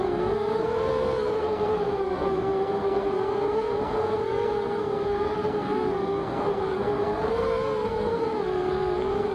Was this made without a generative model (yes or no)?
no